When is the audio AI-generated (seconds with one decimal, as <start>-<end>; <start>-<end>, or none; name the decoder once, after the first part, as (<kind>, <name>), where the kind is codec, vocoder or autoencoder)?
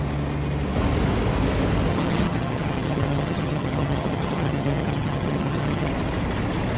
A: 1.9-5.9 (vocoder, HiFi-GAN)